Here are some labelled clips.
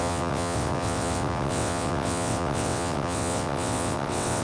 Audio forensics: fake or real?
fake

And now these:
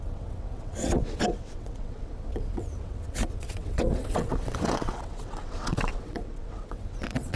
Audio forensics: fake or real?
fake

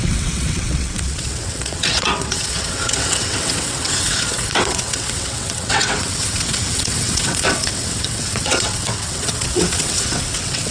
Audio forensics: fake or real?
fake